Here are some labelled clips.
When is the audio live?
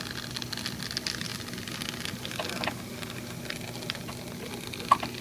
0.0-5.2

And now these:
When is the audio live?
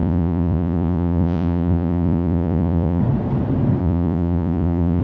3.0-3.8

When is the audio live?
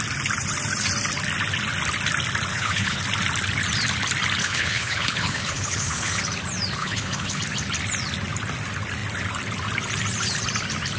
0.0-2.5; 3.0-4.4; 6.2-6.8; 7.4-11.0